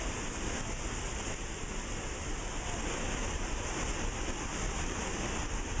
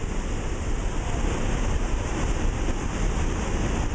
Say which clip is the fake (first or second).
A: first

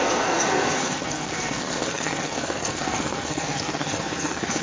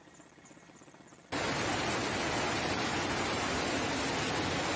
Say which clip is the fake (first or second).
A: first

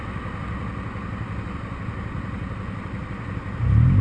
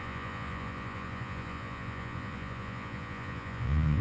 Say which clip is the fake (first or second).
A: second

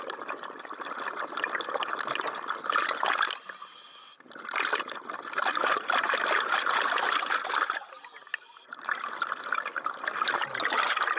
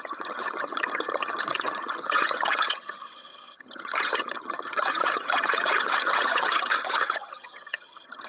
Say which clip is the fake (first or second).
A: second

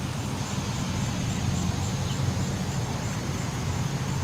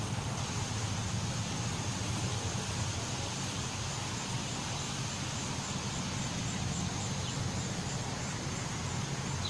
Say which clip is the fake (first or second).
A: second